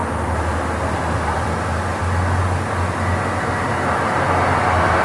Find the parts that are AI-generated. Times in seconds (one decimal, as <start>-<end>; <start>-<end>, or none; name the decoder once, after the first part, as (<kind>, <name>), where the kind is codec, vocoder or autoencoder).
none